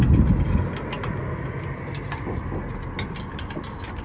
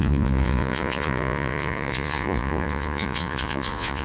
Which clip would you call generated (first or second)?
second